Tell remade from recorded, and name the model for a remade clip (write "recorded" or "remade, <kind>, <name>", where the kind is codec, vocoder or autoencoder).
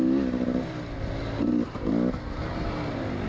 recorded